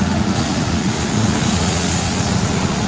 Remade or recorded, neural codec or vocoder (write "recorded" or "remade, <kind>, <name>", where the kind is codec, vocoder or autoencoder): remade, vocoder, Vocos